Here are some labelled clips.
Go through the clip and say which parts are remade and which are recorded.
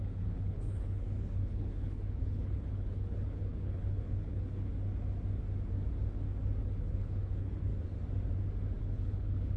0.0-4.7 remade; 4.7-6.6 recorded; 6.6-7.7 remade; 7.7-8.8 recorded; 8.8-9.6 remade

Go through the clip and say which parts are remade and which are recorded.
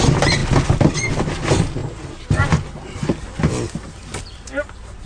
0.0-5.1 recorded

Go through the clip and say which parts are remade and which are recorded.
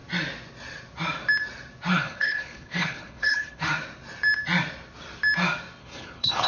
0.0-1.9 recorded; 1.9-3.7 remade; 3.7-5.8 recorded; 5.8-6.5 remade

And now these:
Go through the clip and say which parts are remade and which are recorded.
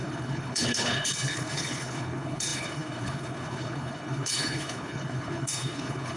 0.0-6.2 remade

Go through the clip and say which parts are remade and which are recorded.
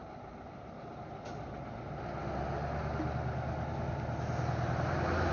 0.0-5.3 recorded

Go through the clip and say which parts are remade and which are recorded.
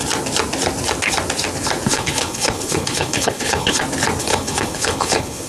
0.0-1.9 recorded; 1.9-3.8 remade; 3.8-4.2 recorded; 4.2-5.5 remade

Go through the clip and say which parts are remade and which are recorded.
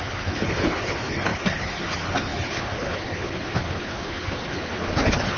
0.0-5.4 remade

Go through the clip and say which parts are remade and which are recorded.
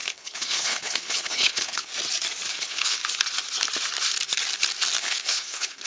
0.0-1.9 remade; 1.9-2.5 recorded; 2.5-3.0 remade; 3.0-5.0 recorded; 5.0-5.9 remade